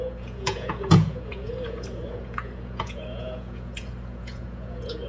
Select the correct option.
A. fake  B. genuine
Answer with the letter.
A